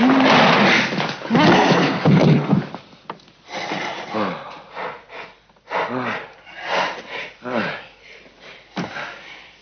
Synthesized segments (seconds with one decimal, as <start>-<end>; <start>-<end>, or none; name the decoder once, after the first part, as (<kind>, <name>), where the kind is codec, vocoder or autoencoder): 1.8-2.5 (codec, SNAC)